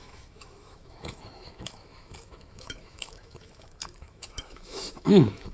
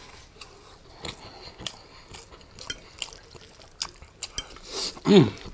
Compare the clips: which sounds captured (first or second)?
second